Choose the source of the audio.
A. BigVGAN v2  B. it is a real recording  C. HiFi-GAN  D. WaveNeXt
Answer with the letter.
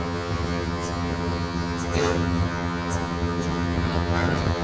C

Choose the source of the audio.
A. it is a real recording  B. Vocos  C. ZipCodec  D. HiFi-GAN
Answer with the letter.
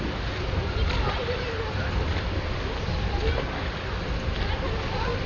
A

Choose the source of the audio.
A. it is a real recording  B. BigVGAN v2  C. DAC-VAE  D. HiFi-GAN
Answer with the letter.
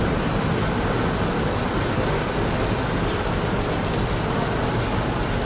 A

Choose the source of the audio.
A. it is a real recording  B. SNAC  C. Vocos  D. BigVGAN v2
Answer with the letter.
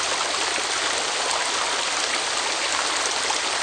A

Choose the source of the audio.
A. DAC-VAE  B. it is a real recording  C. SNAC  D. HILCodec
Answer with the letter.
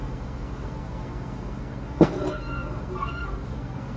C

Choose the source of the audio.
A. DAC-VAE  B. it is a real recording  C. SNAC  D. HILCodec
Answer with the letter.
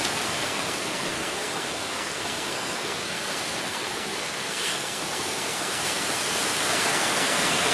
C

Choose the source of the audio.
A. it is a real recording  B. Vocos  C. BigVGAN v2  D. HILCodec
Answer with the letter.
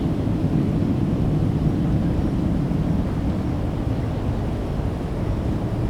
A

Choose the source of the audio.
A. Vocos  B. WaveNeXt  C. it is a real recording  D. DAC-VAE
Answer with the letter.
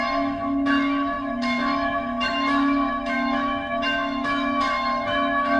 D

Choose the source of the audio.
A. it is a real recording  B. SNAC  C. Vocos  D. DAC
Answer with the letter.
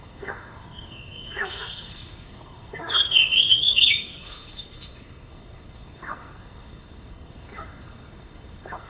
B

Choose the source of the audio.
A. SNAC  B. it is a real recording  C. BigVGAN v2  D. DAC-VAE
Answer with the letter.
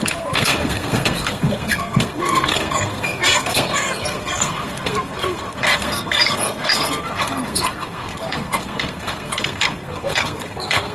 A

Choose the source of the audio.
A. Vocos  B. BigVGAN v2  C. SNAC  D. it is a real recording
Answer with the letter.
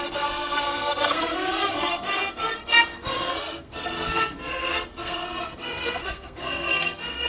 C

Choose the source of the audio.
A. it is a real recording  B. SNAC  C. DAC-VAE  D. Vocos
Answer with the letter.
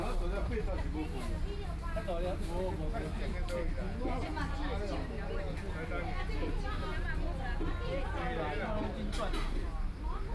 A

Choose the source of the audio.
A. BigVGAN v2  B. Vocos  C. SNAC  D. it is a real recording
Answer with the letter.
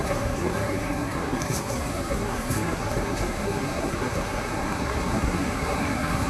C